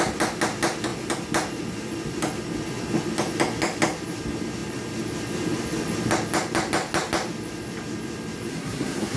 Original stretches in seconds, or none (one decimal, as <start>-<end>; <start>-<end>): 0.0-8.5